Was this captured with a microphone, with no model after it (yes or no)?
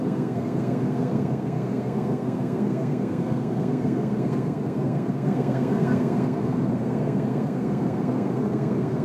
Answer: no